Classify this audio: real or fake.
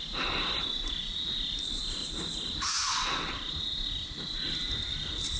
real